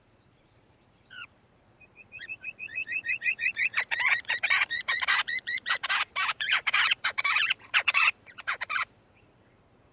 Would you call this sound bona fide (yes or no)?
no